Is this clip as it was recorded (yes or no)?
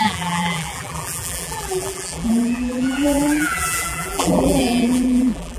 no